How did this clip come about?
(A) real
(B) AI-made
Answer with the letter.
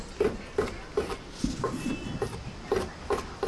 A